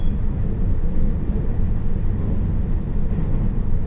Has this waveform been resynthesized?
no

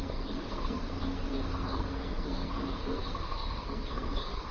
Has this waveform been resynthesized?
yes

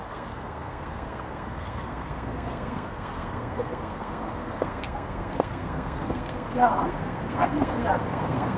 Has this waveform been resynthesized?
yes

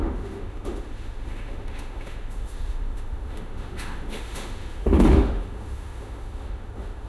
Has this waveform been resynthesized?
yes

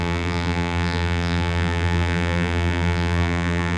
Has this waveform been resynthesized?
yes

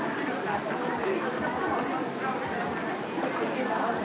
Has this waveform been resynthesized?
no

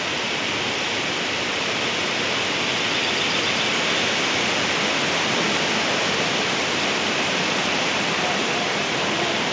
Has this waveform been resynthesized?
no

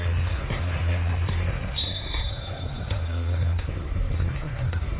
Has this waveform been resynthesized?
yes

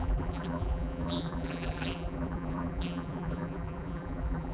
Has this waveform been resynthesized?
yes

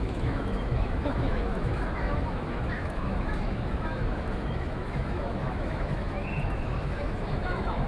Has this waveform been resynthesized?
yes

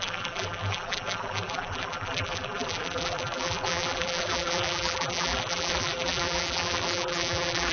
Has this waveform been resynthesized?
yes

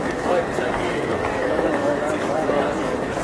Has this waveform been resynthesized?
yes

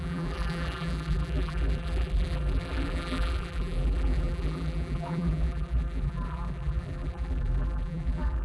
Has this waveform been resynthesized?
yes